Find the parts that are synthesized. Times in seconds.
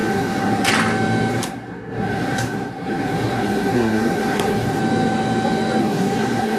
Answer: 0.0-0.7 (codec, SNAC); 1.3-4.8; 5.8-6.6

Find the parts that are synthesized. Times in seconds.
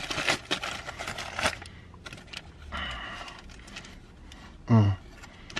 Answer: none